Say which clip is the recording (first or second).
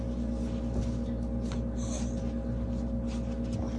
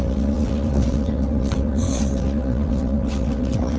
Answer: first